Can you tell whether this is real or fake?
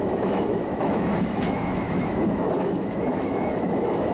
fake